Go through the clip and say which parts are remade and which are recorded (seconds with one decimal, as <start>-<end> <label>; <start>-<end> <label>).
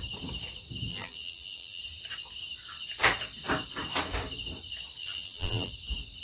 0.0-0.9 recorded; 0.9-1.8 remade; 1.8-5.0 recorded; 5.0-5.7 remade; 5.7-6.2 recorded